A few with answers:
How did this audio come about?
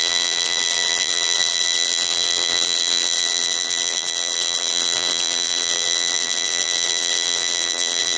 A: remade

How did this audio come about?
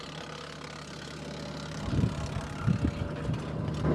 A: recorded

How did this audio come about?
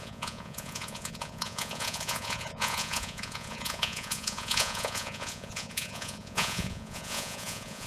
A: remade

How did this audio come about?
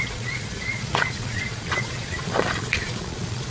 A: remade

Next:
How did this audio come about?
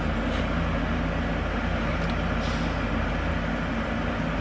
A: recorded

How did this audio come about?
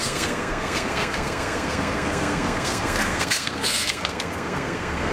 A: remade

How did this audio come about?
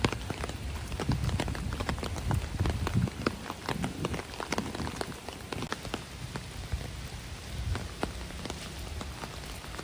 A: recorded